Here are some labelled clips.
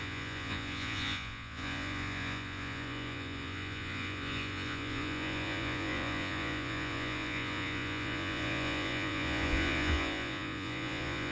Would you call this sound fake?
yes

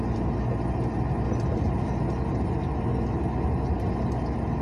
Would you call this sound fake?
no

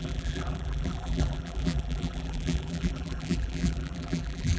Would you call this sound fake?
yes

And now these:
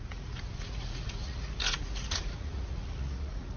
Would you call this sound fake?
yes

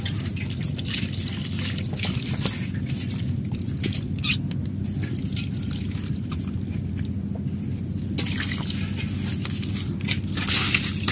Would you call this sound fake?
no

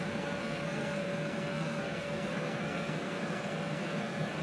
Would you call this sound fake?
yes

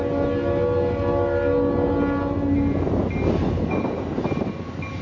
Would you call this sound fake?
no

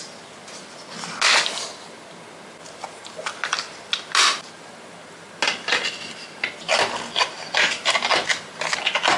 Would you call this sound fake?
no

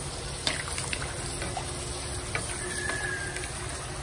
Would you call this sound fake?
no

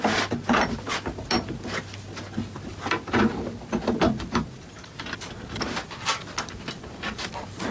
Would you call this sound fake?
no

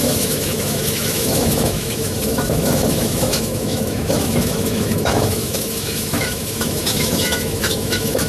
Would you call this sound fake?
yes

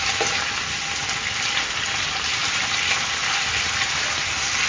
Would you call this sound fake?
no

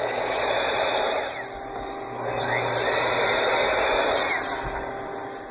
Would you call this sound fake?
no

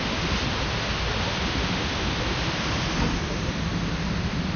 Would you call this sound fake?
no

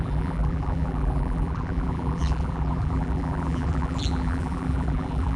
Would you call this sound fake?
yes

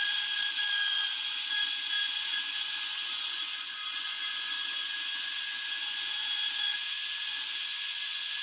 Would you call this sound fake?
yes